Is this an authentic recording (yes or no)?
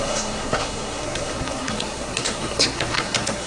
no